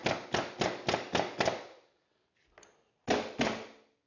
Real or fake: real